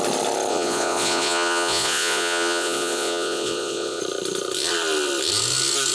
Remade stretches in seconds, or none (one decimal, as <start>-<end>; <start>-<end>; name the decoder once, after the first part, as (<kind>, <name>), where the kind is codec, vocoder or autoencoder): 0.5-4.0 (vocoder, Vocos)